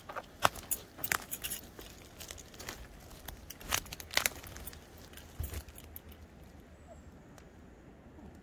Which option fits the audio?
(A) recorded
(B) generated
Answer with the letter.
A